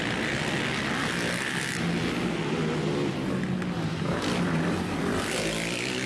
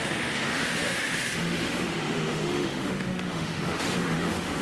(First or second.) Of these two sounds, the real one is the first